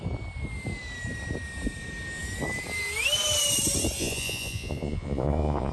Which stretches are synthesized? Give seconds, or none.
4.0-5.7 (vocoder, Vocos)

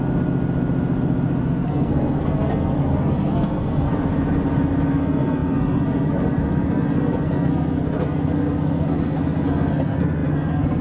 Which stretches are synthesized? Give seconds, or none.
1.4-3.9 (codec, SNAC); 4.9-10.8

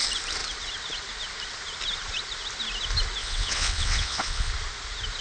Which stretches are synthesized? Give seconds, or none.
3.2-4.5 (vocoder, WaveNeXt)

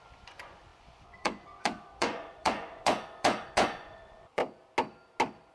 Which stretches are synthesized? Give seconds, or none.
0.0-4.4 (vocoder, Vocos)

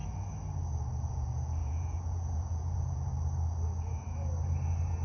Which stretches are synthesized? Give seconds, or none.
1.1-3.1 (vocoder, Vocos)

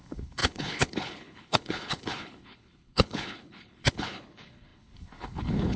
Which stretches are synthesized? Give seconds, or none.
0.0-5.8 (codec, HILCodec)

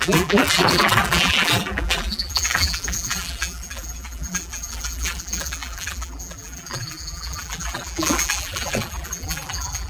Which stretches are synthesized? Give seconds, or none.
0.0-9.9 (vocoder, BigVGAN v2)